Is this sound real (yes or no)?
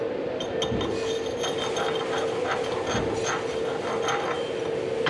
yes